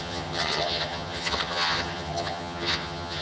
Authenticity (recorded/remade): remade